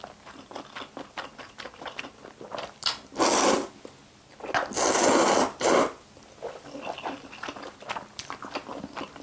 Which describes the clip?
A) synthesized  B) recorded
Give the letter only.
B